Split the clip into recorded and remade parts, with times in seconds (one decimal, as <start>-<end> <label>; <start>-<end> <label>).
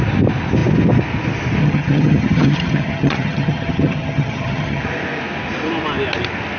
0.0-1.6 recorded; 1.6-4.8 remade; 4.8-6.6 recorded